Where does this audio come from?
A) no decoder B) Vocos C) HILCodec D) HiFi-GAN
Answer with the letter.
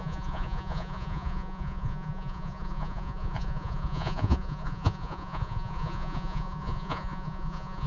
B